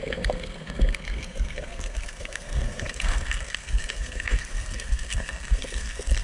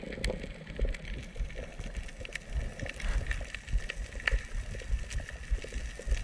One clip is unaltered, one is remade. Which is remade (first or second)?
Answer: first